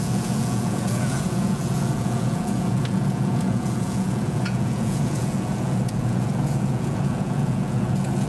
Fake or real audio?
fake